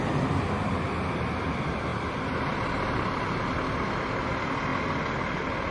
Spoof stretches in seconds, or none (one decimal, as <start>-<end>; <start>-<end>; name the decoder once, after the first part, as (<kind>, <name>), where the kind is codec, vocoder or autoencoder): none